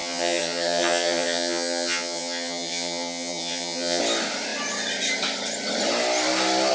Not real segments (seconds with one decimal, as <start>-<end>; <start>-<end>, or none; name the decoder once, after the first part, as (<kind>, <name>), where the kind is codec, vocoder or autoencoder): 0.0-4.0 (vocoder, HiFi-GAN)